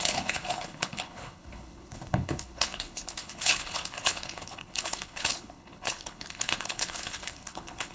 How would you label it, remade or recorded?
remade